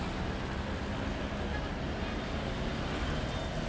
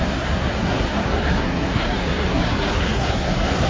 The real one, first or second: first